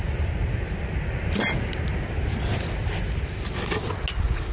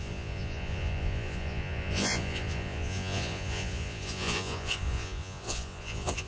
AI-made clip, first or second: second